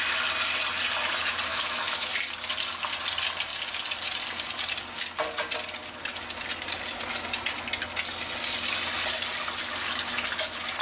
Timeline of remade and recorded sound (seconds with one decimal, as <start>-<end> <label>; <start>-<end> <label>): 0.0-1.5 recorded; 1.5-2.1 remade; 2.1-10.8 recorded